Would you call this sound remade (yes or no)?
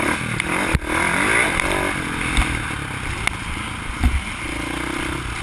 no